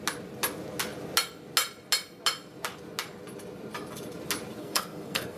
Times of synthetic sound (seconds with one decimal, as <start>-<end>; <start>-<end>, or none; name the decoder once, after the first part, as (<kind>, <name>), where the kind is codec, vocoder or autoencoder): 4.6-5.4 (codec, SNAC)